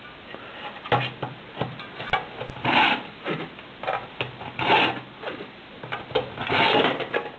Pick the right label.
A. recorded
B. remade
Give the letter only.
A